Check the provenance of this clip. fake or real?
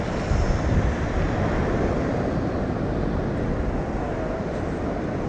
real